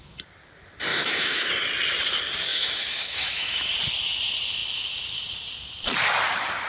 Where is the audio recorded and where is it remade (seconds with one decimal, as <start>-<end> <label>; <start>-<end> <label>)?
0.0-0.9 recorded; 0.9-1.5 remade; 1.5-2.5 recorded; 2.5-3.7 remade; 3.7-6.7 recorded